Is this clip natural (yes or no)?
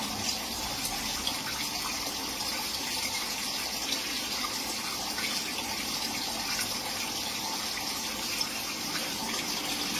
yes